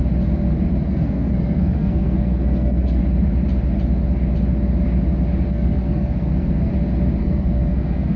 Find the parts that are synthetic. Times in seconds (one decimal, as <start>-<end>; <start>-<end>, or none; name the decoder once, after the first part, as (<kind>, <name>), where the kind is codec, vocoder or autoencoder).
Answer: 0.9-3.0 (codec, SNAC); 5.5-6.7; 7.2-8.2